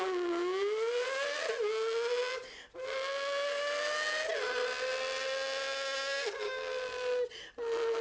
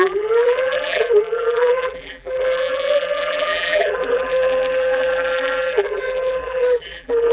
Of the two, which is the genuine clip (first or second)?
first